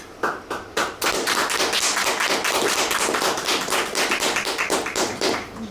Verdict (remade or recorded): recorded